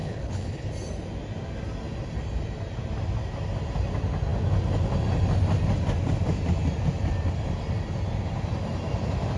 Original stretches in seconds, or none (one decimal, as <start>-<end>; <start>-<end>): 0.7-9.4